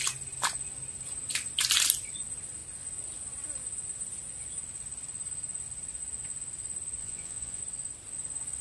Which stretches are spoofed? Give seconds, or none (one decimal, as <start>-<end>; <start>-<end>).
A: 7.0-7.6

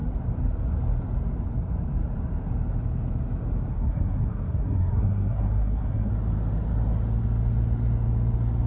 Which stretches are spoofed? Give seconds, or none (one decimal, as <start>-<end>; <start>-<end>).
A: 3.7-6.1